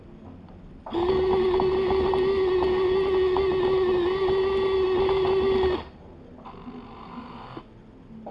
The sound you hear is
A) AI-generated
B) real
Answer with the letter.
B